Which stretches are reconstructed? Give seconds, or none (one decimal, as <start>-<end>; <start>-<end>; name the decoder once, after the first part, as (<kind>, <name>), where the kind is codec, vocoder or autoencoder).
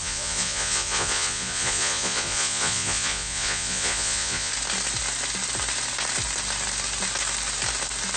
0.0-4.5 (vocoder, Vocos)